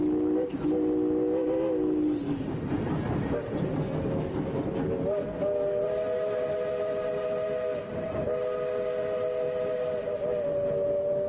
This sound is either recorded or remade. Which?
recorded